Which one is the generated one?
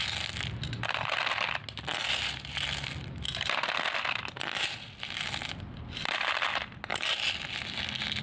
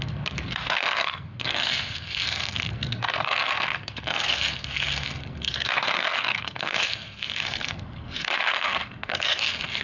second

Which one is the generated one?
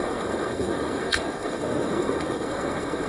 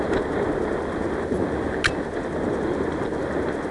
first